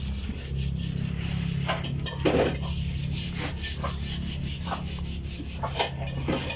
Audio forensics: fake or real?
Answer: real